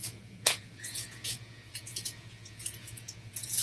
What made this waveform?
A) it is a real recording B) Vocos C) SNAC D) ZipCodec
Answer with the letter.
B